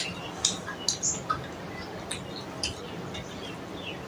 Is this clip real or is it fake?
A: real